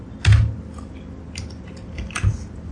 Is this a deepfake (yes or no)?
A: no